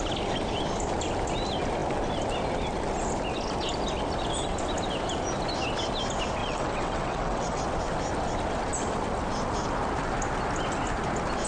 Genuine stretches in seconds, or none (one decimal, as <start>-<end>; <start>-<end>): 0.0-6.4; 7.6-11.5